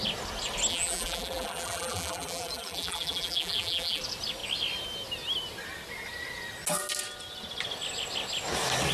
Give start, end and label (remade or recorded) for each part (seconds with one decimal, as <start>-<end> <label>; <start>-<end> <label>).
0.0-0.7 recorded; 0.7-4.0 remade; 4.0-8.9 recorded